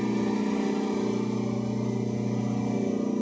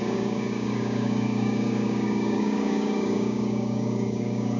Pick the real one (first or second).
first